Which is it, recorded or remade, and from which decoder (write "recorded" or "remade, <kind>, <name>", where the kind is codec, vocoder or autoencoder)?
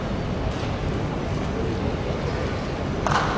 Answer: recorded